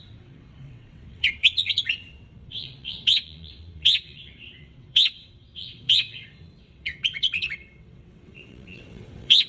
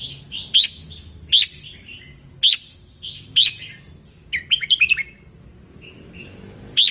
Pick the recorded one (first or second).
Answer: second